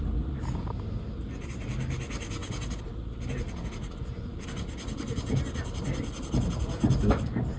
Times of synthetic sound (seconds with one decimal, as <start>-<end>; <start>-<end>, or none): none